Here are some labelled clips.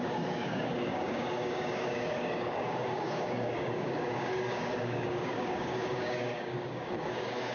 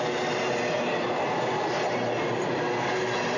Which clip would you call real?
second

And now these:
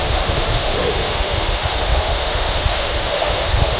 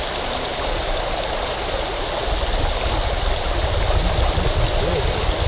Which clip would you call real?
second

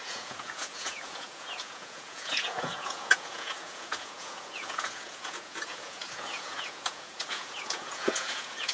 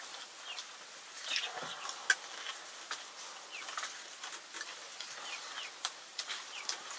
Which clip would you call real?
second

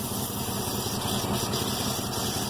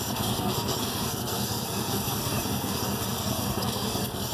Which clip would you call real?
first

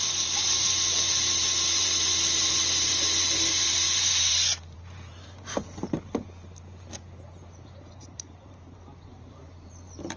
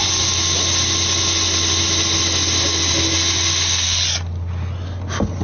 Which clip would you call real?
second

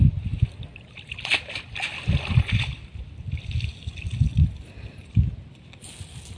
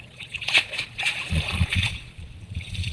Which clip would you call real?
first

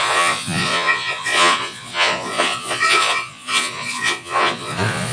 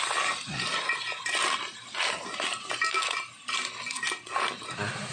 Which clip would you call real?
second